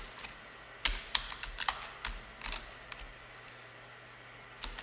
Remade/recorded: recorded